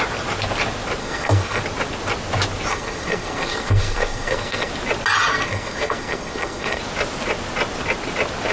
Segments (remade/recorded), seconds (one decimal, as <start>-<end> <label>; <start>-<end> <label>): 0.0-1.0 recorded; 1.0-1.6 remade; 1.6-2.7 recorded; 2.7-4.7 remade; 4.7-5.3 recorded; 5.3-6.8 remade; 6.8-8.5 recorded